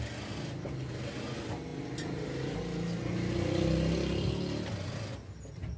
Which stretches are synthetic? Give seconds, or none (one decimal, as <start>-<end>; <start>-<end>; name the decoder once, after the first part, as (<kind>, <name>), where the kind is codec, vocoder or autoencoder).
none